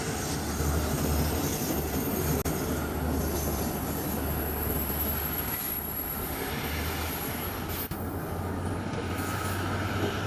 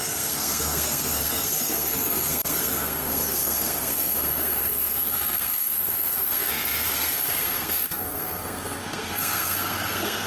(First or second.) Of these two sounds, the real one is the first